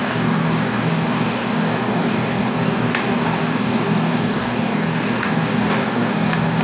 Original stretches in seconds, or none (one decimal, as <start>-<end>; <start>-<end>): none